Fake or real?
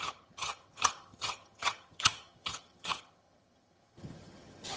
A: fake